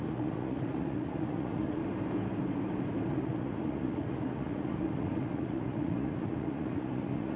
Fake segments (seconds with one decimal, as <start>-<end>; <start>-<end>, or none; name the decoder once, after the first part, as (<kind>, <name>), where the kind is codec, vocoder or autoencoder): 0.0-1.8 (vocoder, Vocos); 3.1-7.4